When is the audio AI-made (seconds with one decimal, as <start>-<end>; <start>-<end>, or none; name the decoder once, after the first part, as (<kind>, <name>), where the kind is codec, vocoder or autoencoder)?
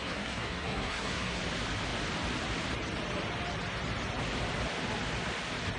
0.0-1.4 (codec, SNAC)